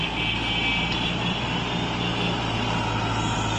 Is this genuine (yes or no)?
yes